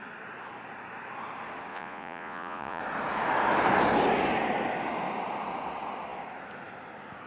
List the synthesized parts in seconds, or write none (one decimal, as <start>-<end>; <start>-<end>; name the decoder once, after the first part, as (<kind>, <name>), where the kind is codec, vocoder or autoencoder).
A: 1.7-2.8 (vocoder, Vocos)